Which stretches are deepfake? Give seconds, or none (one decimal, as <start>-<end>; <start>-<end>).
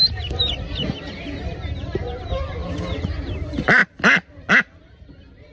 none